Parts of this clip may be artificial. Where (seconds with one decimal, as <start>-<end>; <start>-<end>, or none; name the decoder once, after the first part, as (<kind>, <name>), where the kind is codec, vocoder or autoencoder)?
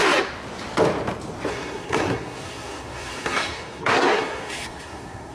1.5-5.3 (codec, SNAC)